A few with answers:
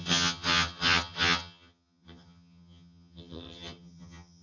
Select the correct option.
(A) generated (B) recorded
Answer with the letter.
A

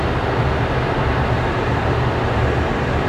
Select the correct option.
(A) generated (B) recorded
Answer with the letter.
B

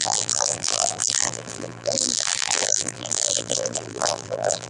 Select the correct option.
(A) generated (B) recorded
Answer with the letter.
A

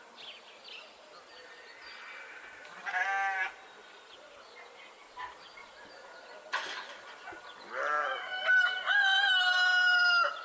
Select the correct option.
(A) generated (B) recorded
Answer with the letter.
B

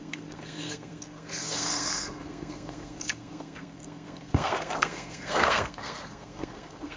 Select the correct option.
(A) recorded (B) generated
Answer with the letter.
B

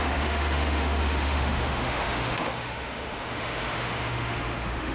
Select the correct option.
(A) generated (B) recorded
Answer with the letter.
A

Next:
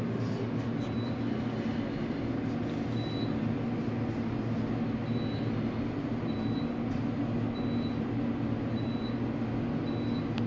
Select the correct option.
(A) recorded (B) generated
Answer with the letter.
A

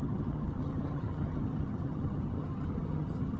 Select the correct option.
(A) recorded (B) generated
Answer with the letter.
B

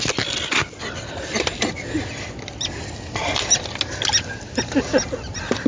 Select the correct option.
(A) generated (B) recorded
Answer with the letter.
B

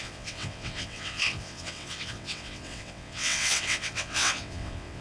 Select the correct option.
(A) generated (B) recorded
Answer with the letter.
A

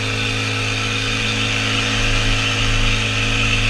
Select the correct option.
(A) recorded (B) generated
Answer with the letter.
A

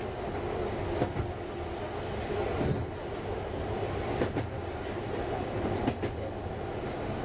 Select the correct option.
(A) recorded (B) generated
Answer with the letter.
A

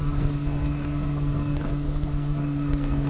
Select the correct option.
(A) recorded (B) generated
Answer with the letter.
B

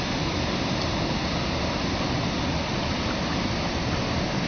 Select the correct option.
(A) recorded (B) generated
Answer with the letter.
A